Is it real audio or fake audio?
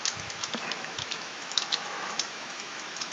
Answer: fake